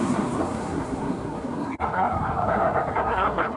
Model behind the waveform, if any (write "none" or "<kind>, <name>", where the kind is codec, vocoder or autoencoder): codec, SNAC